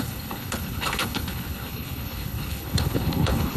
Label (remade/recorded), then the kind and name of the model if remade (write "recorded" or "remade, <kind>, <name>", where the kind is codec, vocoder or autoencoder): remade, codec, HILCodec